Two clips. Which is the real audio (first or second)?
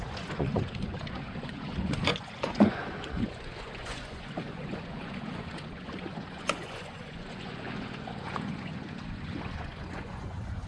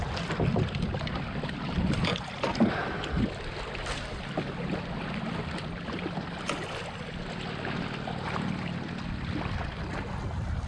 second